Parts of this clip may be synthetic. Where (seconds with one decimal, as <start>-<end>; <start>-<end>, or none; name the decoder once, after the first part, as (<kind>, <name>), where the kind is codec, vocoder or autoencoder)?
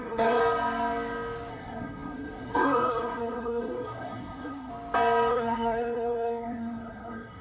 0.0-0.4 (codec, SNAC); 1.5-4.7; 5.3-7.4